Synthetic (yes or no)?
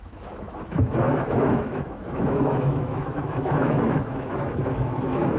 yes